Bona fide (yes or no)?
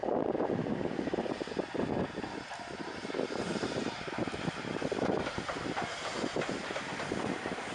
yes